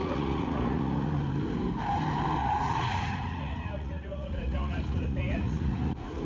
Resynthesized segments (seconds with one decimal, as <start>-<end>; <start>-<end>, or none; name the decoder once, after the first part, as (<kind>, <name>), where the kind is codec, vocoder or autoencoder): 0.0-1.2 (vocoder, Vocos); 2.4-6.2

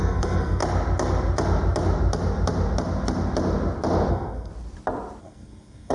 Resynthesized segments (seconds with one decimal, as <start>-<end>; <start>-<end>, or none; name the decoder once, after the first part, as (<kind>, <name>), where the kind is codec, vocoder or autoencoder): 0.0-0.6 (codec, SNAC); 4.1-4.5; 5.2-5.9

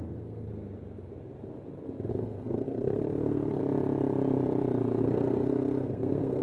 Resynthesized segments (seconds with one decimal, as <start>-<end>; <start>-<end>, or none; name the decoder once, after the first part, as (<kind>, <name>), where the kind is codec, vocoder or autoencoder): 0.0-0.5 (codec, SNAC); 2.1-3.6; 5.0-6.4